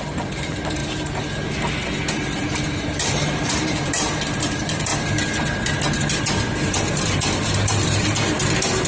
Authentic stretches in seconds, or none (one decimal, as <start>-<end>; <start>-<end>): 0.8-2.1; 4.9-6.0